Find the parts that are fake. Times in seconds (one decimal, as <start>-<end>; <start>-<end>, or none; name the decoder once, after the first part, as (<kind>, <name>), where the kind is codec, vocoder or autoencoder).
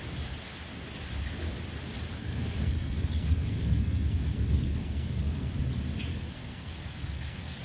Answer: 2.2-5.5 (codec, SNAC); 6.1-7.6